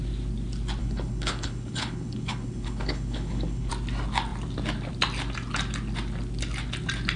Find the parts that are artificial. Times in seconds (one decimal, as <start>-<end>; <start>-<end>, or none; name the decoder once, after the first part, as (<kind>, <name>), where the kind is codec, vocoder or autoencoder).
0.8-3.7 (codec, HILCodec)